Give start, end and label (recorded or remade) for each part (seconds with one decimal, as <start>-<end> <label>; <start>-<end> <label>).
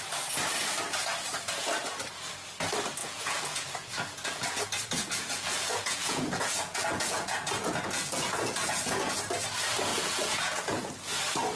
0.0-3.0 recorded; 3.0-4.6 remade; 4.6-5.0 recorded; 5.0-9.1 remade; 9.1-9.9 recorded; 9.9-10.9 remade; 10.9-11.6 recorded